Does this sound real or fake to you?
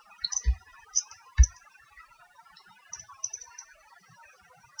real